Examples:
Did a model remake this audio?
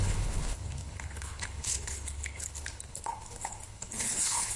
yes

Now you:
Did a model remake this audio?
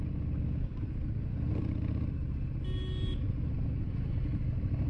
no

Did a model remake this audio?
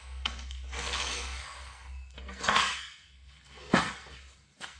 yes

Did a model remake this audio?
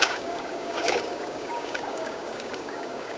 yes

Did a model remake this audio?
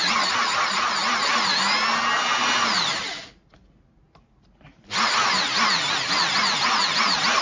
no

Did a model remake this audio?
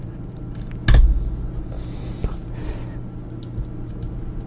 no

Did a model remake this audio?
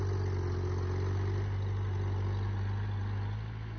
no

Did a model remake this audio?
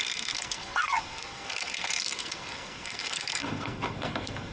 yes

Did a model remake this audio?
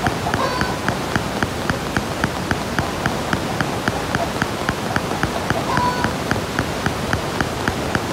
no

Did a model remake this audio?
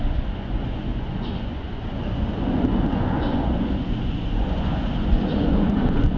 yes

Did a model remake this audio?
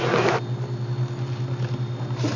no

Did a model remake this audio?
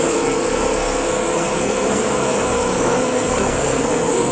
yes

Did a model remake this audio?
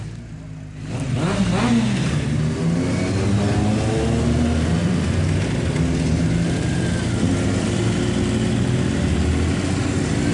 no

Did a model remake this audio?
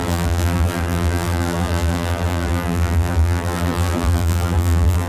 yes